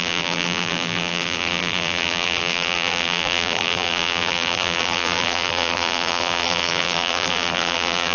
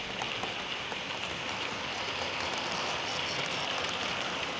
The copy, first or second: first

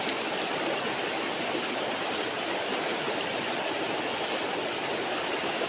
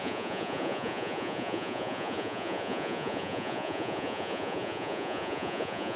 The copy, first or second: second